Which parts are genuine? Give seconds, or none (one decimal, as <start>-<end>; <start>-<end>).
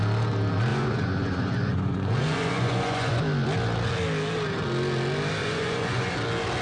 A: 0.0-0.7; 3.2-5.4; 6.1-6.6